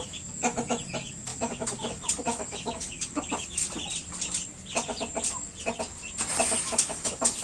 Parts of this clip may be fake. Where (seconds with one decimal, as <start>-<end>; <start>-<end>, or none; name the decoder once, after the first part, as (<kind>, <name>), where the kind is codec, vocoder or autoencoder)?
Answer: 0.0-3.6 (autoencoder, DAC-VAE); 6.6-7.4